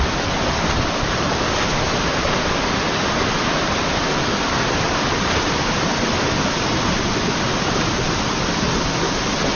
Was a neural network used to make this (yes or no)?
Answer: no